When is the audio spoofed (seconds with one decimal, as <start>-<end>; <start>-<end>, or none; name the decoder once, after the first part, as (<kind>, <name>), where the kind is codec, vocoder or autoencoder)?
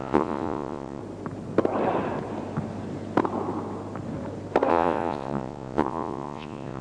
0.0-1.0 (vocoder, Vocos); 4.7-6.8